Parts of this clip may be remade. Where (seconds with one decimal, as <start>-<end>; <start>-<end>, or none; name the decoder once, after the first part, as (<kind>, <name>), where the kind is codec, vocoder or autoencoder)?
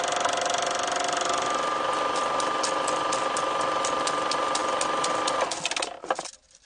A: none